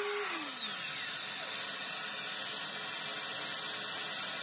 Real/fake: real